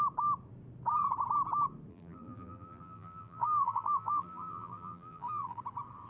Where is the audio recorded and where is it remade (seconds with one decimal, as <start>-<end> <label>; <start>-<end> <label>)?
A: 0.0-1.9 recorded; 1.9-5.6 remade; 5.6-6.1 recorded